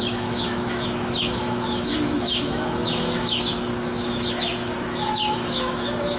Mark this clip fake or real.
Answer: fake